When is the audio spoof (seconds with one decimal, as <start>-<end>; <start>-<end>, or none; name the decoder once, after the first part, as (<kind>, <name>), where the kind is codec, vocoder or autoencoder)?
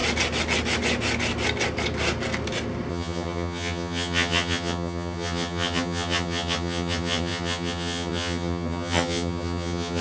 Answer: 2.9-10.0 (vocoder, HiFi-GAN)